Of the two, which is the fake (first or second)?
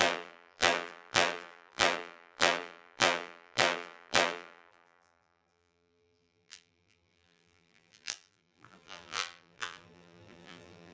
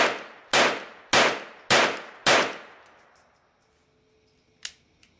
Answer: first